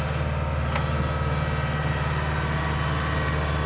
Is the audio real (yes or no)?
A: yes